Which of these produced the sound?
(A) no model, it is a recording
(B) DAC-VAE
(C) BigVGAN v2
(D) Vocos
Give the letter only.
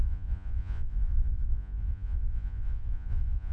D